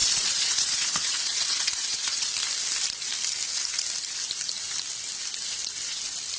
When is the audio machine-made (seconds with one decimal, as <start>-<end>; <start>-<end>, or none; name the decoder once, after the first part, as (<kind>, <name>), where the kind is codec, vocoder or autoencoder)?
0.0-2.3 (vocoder, Vocos)